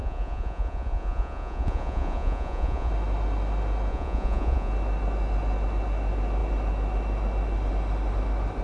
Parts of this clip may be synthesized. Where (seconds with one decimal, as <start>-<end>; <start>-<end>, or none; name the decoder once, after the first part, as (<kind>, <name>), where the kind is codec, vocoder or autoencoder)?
0.0-2.9 (vocoder, Vocos); 3.9-4.7